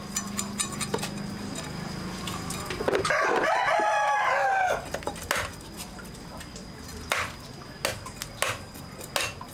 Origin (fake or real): real